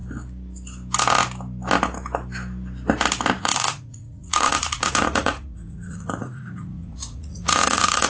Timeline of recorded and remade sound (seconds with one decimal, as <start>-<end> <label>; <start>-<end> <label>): 0.0-3.4 recorded; 3.4-8.1 remade